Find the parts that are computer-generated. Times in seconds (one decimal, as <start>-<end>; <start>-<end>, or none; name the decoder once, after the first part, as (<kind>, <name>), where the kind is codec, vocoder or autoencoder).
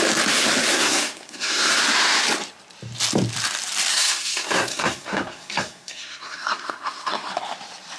0.7-1.8 (codec, SNAC); 3.9-7.4